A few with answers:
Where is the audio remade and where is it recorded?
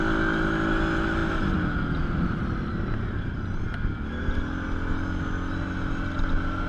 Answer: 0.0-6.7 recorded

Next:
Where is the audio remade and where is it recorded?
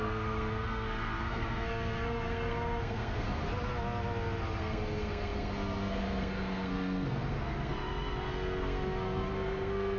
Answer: 0.0-3.4 remade; 3.4-4.6 recorded; 4.6-10.0 remade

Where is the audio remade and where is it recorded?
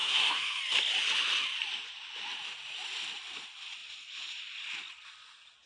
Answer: 0.0-0.6 remade; 0.6-5.7 recorded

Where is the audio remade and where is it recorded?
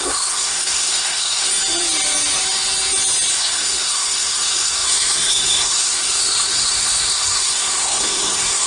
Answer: 0.0-1.5 remade; 1.5-3.3 recorded; 3.3-8.7 remade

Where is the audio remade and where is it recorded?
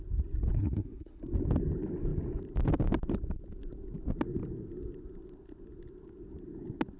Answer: 0.0-0.5 recorded; 0.5-1.2 remade; 1.2-7.0 recorded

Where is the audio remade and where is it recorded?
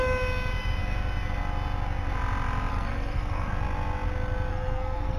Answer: 0.0-2.7 recorded; 2.7-3.5 remade; 3.5-4.5 recorded; 4.5-5.2 remade